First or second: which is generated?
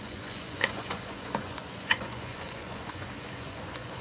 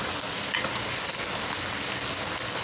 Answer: first